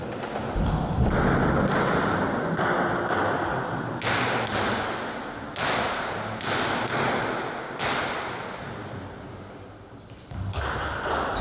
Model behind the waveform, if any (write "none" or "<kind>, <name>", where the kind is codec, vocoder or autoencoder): none